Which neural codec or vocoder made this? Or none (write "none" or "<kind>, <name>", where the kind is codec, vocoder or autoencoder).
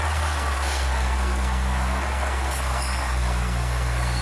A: codec, SNAC